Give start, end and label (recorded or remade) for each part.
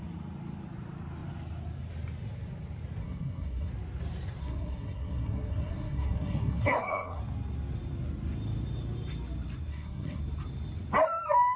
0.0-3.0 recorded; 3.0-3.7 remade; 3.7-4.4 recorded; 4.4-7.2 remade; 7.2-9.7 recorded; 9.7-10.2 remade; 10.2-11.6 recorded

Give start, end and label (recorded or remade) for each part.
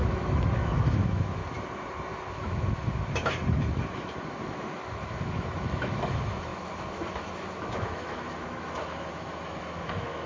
0.0-1.4 remade; 1.4-2.3 recorded; 2.3-10.3 remade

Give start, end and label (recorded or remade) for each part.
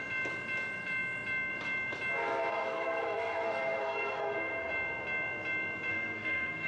0.0-2.5 recorded; 2.5-4.7 remade; 4.7-5.9 recorded; 5.9-6.7 remade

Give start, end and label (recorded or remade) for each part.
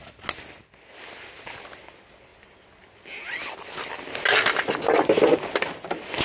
0.0-6.2 recorded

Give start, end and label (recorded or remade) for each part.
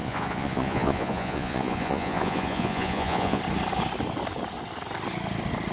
0.0-3.4 remade; 3.4-5.7 recorded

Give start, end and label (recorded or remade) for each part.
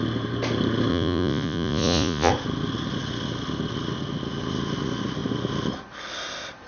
0.0-0.9 recorded; 0.9-2.3 remade; 2.3-6.7 recorded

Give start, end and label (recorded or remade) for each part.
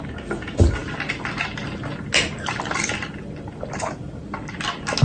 0.0-5.0 recorded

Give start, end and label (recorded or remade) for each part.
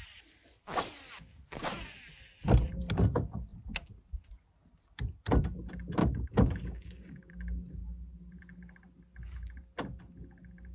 0.0-6.0 recorded; 6.0-7.3 remade; 7.3-10.7 recorded